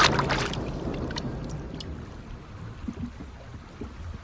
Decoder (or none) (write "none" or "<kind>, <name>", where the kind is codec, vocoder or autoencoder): none